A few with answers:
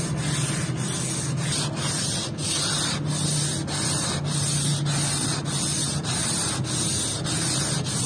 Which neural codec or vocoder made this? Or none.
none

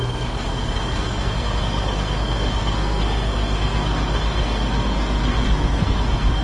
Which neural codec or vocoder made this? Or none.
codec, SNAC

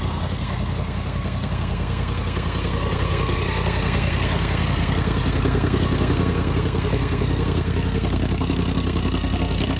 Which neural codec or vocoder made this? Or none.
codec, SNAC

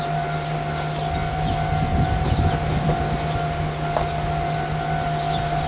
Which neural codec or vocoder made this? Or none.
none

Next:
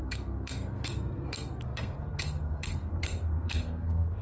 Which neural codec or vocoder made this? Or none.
codec, SNAC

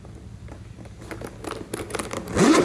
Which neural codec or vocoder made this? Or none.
none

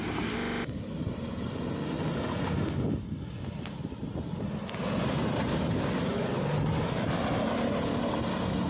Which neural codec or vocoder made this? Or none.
none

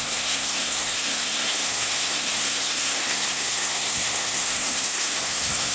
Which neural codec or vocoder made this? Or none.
codec, SNAC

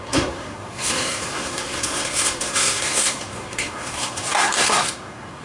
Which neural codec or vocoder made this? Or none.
codec, SNAC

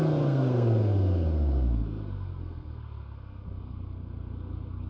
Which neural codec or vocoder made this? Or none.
codec, SNAC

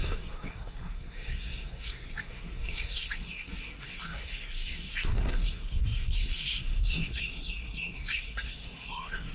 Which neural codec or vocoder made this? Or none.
codec, SNAC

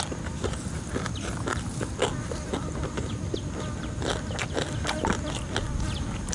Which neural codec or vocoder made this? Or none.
none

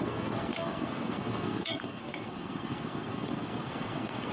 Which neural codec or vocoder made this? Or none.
codec, SNAC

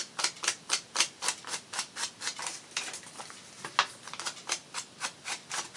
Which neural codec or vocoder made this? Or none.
none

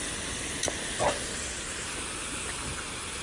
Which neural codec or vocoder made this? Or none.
none